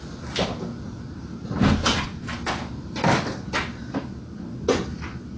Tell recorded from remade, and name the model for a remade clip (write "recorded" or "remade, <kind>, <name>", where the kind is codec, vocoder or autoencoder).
recorded